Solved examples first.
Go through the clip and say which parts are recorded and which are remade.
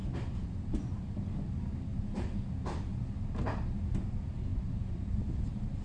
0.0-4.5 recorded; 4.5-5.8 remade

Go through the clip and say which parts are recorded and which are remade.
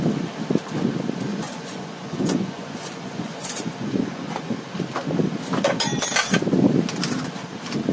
0.0-1.3 recorded; 1.3-4.5 remade; 4.5-7.9 recorded